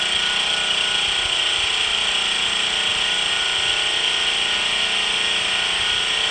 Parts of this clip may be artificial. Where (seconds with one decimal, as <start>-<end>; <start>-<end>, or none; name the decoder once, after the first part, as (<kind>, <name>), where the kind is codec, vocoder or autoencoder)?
none

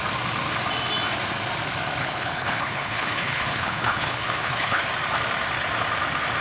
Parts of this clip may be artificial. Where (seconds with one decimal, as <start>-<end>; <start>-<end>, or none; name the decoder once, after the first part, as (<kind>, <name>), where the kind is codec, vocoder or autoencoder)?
2.0-4.8 (codec, HILCodec)

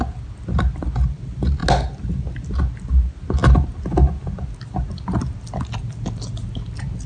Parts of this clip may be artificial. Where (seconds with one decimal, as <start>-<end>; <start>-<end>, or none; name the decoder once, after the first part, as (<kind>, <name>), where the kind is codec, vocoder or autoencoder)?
none

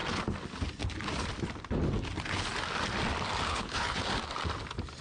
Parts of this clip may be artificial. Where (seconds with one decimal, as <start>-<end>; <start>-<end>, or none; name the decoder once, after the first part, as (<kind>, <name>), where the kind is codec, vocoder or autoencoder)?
3.5-4.0 (codec, HILCodec)

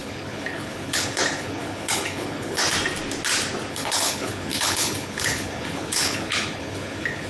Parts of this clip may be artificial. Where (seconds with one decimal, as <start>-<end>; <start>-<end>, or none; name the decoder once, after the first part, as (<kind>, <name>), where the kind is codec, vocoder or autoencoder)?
0.0-2.6 (codec, HILCodec); 3.7-7.3

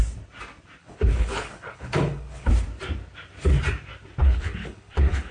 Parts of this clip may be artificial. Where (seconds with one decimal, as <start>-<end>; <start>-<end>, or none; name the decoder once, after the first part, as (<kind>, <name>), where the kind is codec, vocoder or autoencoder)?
0.8-2.5 (codec, HILCodec); 4.2-5.3

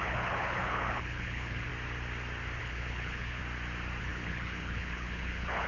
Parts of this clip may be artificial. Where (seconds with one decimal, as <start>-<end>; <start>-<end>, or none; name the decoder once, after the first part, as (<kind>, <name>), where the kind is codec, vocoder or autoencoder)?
0.0-1.7 (codec, HILCodec); 2.6-3.4; 4.0-5.7

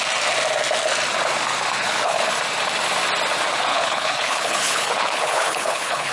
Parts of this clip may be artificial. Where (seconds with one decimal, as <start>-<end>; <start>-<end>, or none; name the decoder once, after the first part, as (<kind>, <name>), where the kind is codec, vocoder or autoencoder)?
1.8-2.3 (codec, HILCodec); 3.7-6.1